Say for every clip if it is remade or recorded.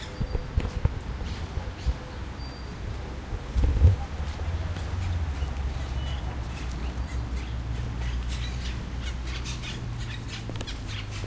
recorded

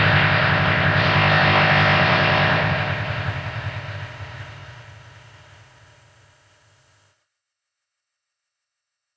remade